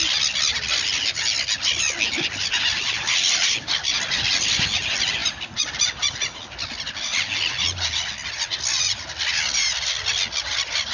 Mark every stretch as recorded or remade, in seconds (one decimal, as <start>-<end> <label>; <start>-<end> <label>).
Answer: 0.0-10.9 recorded